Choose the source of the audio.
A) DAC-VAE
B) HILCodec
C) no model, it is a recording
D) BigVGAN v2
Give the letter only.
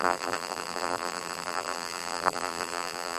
D